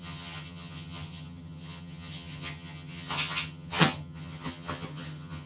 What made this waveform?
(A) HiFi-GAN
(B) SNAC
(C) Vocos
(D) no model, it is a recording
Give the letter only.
A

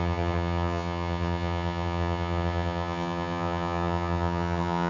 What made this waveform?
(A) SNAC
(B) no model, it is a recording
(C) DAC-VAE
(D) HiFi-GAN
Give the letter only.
D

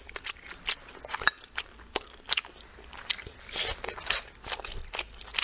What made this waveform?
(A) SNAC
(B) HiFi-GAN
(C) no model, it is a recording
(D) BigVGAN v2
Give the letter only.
C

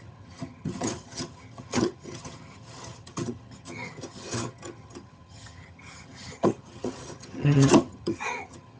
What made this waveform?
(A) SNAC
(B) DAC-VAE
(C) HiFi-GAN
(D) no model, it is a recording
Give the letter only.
C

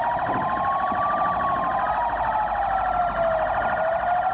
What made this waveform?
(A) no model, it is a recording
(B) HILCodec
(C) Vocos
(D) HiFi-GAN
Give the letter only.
A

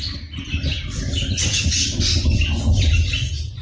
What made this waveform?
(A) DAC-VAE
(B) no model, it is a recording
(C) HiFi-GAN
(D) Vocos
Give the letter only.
B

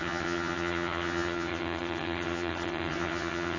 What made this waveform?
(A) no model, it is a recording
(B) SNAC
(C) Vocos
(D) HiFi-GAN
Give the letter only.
D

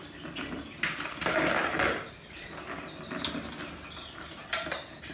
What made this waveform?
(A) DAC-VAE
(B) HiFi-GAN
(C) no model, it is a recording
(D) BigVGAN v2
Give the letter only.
C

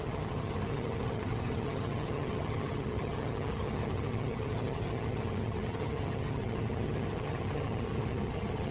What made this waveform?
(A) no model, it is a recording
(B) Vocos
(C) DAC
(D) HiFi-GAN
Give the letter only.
D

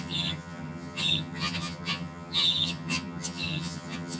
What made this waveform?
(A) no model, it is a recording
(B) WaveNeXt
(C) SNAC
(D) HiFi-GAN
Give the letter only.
D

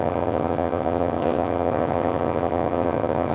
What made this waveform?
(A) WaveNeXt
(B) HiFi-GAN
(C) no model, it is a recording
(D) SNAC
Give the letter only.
B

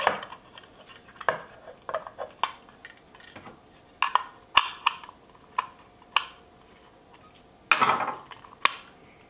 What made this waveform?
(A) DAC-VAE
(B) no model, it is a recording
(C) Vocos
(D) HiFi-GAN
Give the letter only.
B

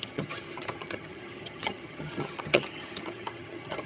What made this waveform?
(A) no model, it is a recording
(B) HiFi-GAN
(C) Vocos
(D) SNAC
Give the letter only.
B